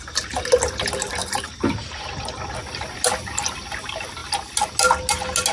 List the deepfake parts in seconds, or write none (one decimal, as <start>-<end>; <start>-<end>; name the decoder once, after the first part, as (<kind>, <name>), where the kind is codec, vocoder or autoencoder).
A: 1.2-1.9 (vocoder, BigVGAN v2)